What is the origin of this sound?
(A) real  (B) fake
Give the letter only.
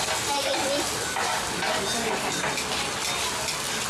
A